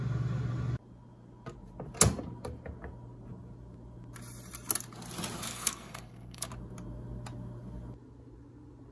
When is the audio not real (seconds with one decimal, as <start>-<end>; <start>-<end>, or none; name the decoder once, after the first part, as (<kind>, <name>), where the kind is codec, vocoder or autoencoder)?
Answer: 5.5-6.5 (codec, SNAC)